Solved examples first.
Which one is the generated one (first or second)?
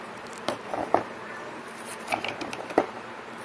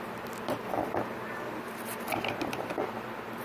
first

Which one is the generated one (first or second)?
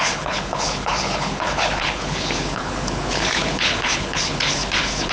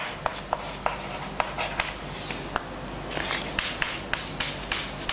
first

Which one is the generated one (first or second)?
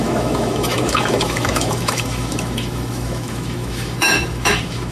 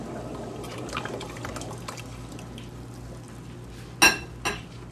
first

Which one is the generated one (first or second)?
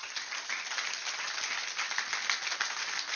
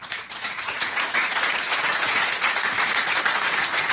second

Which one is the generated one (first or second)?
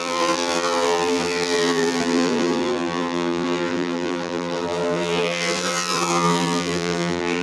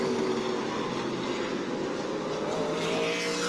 first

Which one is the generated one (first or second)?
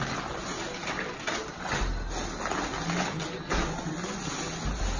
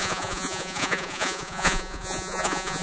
second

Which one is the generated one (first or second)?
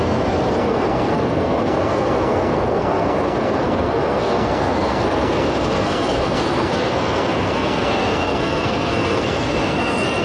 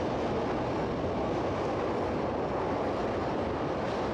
first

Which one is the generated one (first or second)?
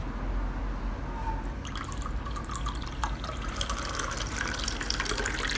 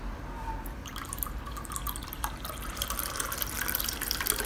second